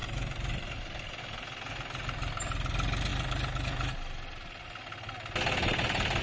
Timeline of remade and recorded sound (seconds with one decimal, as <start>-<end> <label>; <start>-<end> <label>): 0.0-1.2 remade; 1.2-6.2 recorded